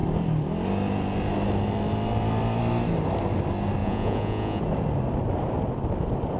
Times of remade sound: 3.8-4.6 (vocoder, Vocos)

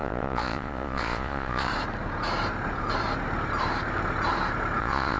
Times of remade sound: 0.0-1.7 (vocoder, Vocos); 4.8-5.2